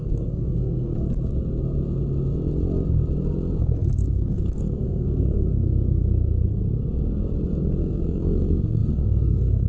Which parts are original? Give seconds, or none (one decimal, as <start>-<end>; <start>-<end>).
0.9-3.6; 6.6-7.8